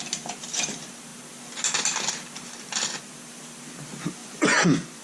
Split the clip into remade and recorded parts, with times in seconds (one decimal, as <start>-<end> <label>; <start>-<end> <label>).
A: 0.0-4.2 recorded; 4.2-5.0 remade